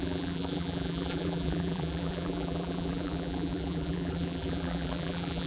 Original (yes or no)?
no